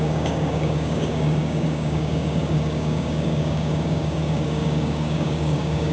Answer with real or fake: fake